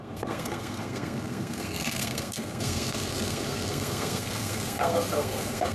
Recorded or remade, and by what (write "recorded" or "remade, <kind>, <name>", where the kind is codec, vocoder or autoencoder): remade, codec, SNAC